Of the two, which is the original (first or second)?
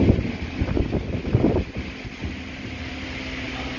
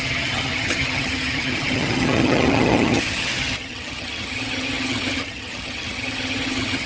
first